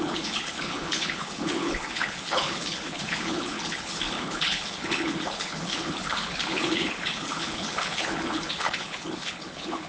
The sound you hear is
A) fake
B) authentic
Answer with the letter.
A